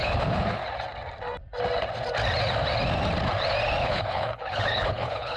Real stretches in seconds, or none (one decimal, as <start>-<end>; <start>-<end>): 0.6-3.8